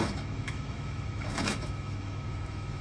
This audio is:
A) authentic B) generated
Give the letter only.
B